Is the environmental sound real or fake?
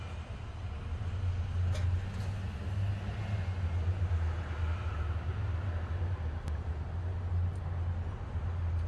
real